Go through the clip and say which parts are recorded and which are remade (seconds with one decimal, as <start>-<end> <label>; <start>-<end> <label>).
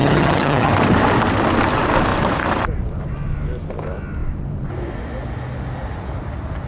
0.0-0.7 remade; 0.7-6.7 recorded